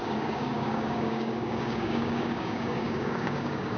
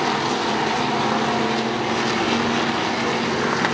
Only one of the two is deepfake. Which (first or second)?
first